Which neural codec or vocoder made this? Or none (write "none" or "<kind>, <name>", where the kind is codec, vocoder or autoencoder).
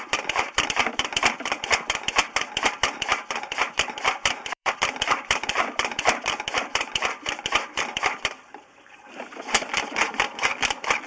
vocoder, BigVGAN v2